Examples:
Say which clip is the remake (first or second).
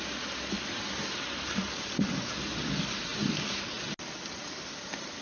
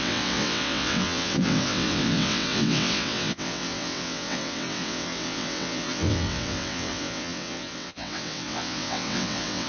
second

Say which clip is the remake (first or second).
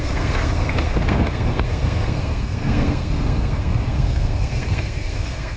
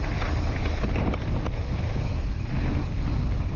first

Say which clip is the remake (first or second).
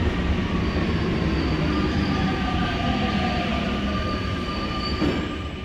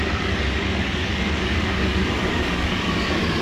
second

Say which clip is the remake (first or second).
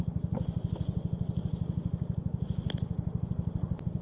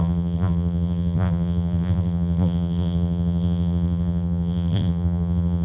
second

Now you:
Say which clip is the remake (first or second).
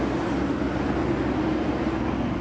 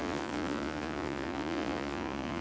second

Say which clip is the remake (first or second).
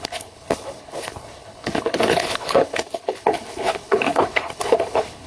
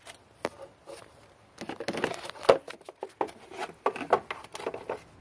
first